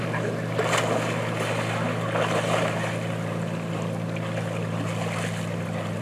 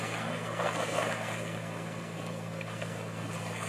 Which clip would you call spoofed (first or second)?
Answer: second